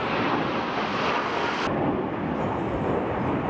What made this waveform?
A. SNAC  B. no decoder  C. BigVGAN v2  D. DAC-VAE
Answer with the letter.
B